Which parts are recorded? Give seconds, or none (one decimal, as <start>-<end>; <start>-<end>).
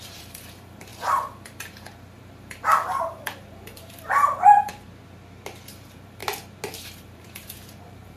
4.7-5.7; 6.2-6.8